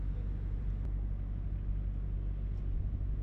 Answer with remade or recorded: recorded